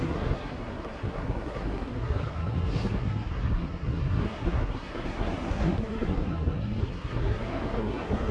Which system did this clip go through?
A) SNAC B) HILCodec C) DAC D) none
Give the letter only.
A